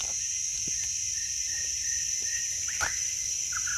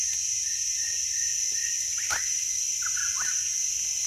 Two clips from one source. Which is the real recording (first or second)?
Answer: second